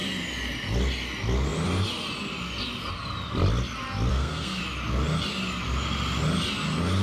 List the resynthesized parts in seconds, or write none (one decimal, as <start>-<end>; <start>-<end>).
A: 4.1-4.6